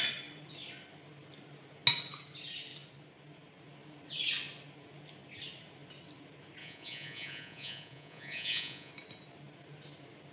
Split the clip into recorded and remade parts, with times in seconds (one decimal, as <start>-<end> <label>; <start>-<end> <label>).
0.0-6.6 recorded; 6.6-8.9 remade; 8.9-10.3 recorded